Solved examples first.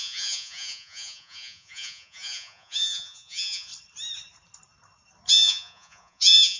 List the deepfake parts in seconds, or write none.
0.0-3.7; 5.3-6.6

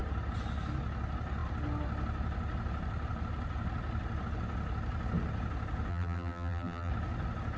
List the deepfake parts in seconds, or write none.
5.9-6.9

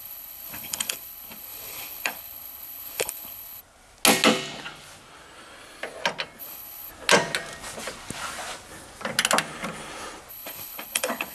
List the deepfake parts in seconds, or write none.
0.0-3.6; 6.4-6.9; 10.3-11.3

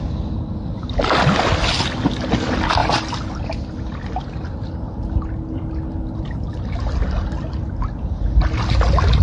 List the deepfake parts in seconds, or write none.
none

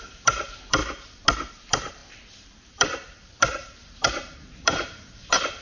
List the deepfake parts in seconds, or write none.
0.0-0.8; 1.5-5.6

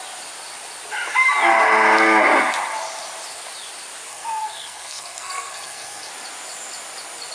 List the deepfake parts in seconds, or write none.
4.1-6.1